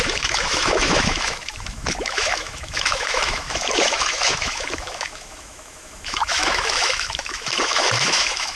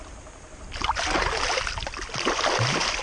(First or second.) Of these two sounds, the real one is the second